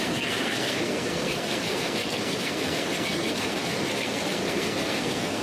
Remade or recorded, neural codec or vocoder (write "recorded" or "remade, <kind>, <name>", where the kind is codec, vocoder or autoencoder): remade, codec, SNAC